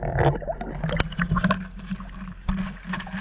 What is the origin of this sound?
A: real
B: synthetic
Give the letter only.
A